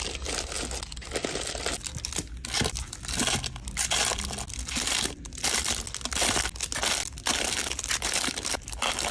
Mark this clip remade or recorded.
recorded